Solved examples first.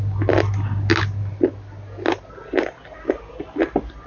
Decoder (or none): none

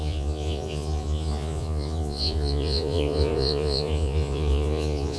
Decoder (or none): vocoder, Vocos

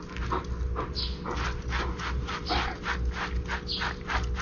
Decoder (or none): none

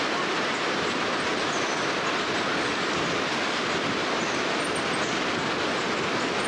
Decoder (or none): none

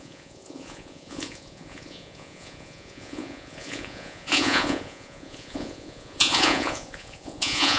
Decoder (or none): vocoder, Vocos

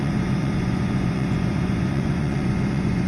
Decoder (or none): vocoder, Vocos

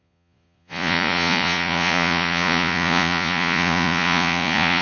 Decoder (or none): vocoder, Vocos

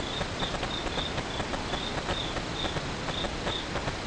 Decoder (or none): none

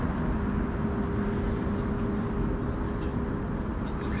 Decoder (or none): none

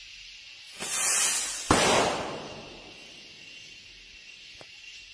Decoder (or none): none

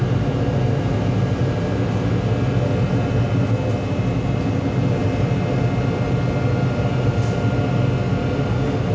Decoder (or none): none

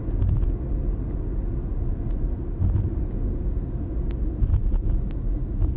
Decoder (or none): none